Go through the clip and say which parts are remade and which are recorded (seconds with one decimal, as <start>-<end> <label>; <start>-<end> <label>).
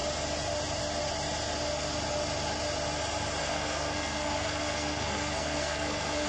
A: 0.0-3.4 recorded; 3.4-6.3 remade